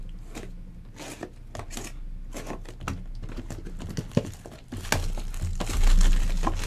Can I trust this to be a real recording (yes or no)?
yes